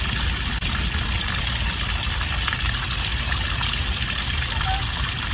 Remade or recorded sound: recorded